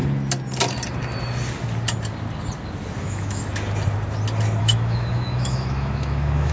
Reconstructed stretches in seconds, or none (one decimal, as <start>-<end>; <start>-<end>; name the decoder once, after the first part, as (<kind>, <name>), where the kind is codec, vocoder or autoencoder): 3.0-3.4 (autoencoder, DAC-VAE); 4.6-6.5